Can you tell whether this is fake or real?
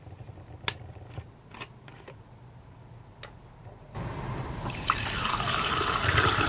fake